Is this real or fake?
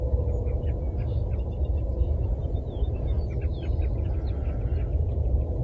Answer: real